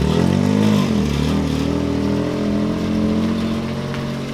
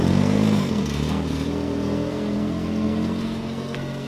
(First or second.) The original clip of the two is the first